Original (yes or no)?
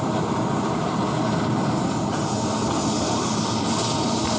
yes